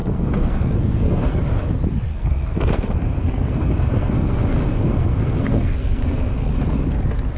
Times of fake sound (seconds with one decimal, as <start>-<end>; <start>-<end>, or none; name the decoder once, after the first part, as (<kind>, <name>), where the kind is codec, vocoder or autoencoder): 0.0-1.4 (codec, SNAC); 2.1-6.5

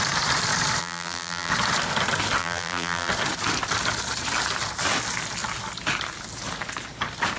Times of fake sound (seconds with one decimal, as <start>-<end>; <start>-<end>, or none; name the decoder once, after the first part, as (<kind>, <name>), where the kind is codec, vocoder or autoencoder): 0.8-1.5 (vocoder, BigVGAN v2); 2.4-3.1

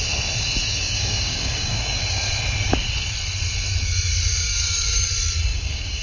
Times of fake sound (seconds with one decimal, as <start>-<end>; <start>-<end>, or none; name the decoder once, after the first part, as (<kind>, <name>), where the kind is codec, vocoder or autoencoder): 0.6-2.0 (codec, DAC); 4.3-5.1; 5.5-6.0

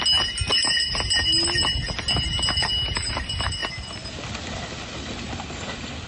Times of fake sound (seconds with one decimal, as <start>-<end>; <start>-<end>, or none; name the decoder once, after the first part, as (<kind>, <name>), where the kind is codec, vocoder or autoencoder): none

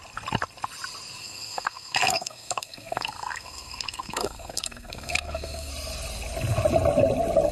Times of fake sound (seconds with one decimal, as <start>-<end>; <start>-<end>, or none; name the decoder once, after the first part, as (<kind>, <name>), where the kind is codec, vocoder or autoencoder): 1.2-5.7 (codec, SNAC)

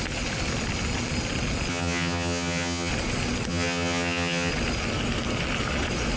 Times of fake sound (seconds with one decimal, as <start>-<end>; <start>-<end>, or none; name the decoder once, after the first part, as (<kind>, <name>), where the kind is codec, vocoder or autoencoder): 1.7-2.9 (vocoder, HiFi-GAN); 3.5-4.5

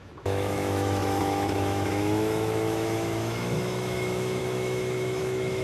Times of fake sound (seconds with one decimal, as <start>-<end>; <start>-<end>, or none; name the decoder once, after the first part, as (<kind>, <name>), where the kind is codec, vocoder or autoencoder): 0.0-5.6 (autoencoder, DAC-VAE)